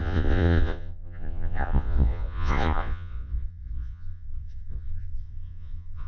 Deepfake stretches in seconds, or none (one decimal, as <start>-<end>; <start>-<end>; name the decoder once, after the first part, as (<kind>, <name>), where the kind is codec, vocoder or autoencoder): 0.0-6.1 (vocoder, Vocos)